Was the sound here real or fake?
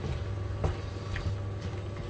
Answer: real